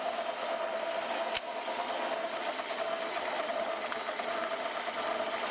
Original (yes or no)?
yes